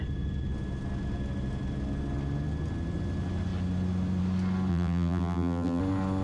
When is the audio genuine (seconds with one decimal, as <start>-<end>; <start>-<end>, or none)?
0.0-4.7; 5.8-6.2